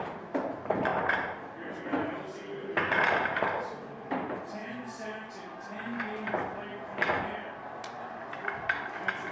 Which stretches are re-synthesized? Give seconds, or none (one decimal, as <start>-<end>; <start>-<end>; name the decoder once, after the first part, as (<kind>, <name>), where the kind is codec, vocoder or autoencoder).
4.6-5.3 (vocoder, BigVGAN v2)